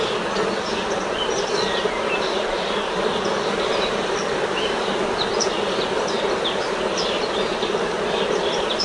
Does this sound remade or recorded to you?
recorded